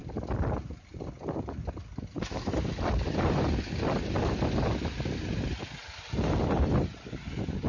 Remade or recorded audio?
recorded